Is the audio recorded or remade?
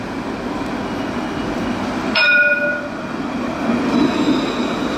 recorded